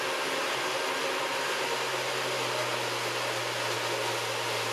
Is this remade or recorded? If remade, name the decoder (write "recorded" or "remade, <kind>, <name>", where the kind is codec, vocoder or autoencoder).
recorded